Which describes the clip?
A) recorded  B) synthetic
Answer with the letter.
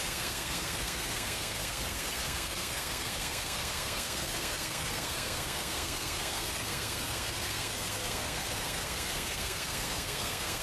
B